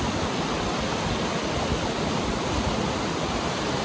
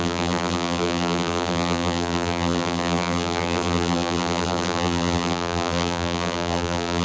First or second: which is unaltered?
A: first